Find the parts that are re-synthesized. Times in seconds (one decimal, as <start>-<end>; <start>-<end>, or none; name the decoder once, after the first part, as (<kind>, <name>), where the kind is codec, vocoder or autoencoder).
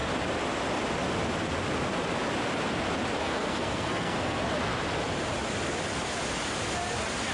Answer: 3.2-4.4 (codec, SNAC)